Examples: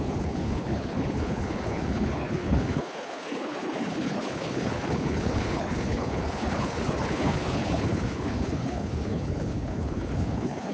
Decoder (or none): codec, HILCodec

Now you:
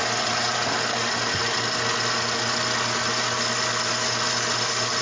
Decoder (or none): none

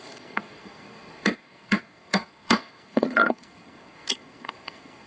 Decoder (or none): codec, SNAC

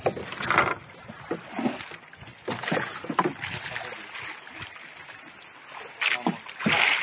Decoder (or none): none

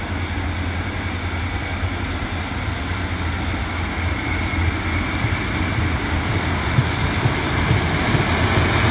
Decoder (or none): none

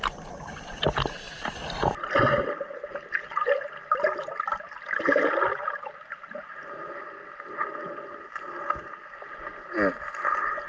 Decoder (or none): vocoder, BigVGAN v2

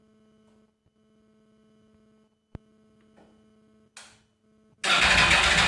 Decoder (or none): none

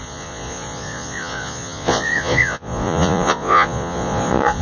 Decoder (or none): vocoder, Vocos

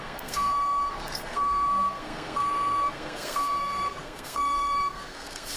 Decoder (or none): codec, SNAC